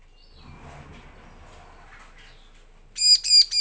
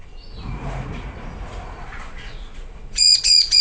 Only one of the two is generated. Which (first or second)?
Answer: second